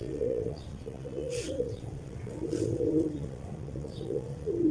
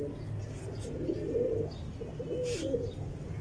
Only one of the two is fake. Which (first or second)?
first